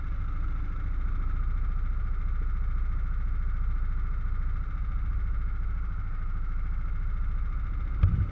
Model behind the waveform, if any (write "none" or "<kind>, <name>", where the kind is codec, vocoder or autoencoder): none